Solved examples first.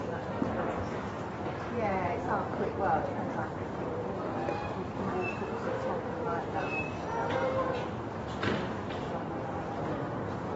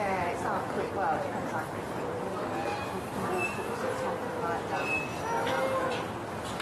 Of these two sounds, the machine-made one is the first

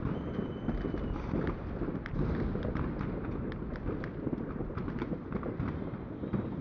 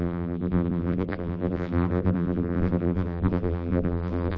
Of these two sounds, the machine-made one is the second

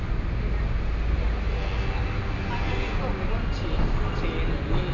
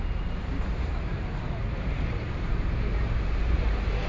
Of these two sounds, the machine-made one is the second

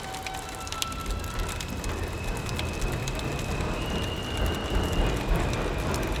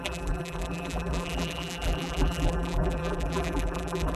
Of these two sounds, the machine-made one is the second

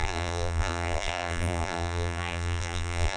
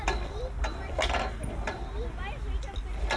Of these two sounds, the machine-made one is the first